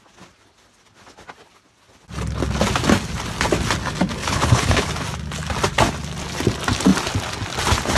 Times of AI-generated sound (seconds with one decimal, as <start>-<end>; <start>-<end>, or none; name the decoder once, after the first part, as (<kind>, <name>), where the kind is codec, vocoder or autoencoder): 4.2-4.9 (codec, HILCodec)